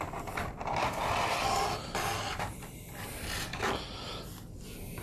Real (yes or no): yes